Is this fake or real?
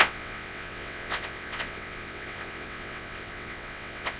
fake